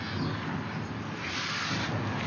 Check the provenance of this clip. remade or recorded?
recorded